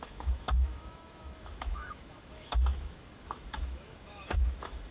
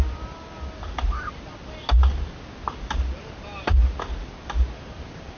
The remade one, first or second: first